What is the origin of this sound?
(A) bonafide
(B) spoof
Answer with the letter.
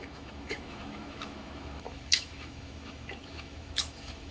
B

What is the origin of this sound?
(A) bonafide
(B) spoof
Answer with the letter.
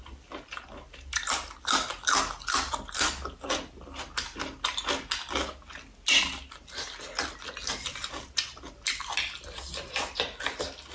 A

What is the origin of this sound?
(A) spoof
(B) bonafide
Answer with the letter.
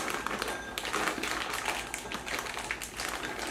B